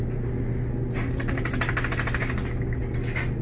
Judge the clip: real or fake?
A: real